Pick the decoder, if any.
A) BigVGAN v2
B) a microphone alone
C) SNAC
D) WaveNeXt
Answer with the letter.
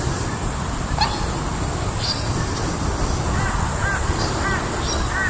B